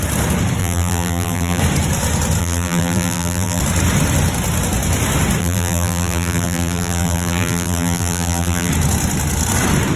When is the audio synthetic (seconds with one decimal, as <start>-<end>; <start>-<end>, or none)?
0.6-1.6; 2.4-3.6; 5.4-8.7